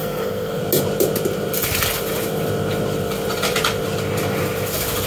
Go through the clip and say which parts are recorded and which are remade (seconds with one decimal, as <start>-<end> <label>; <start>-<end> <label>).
0.0-0.6 remade; 0.6-5.1 recorded

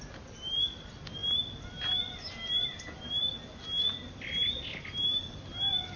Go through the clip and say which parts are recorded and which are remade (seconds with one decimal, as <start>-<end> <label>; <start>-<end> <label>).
0.0-6.0 recorded